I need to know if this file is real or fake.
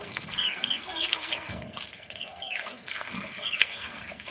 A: fake